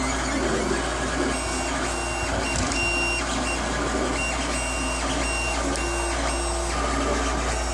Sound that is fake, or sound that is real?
real